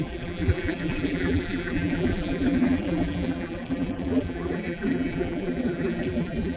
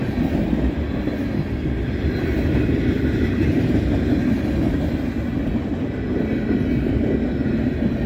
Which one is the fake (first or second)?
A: first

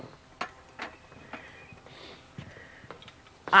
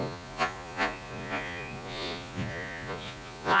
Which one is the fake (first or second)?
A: second